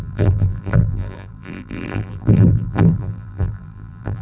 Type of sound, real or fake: fake